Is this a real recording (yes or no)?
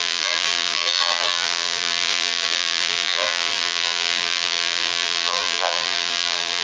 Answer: no